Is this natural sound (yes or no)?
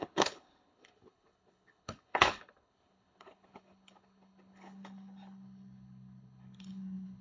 no